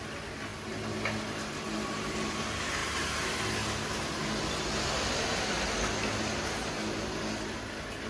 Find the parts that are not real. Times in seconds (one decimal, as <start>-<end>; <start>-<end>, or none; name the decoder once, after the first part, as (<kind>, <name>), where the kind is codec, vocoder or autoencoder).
none